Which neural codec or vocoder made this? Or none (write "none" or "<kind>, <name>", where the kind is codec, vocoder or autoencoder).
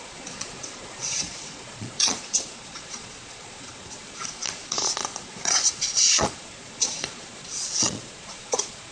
vocoder, Vocos